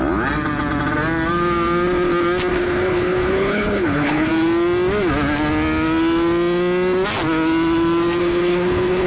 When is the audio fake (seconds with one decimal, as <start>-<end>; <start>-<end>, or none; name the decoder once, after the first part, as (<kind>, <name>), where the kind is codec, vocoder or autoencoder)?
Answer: 2.5-4.3 (codec, HILCodec); 8.2-9.1